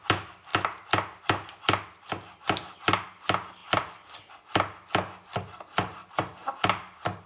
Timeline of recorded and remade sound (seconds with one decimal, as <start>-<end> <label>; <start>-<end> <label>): 0.0-7.3 recorded